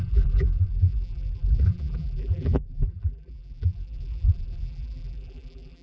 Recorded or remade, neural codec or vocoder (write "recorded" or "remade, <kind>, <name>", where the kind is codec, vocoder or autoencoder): remade, vocoder, BigVGAN v2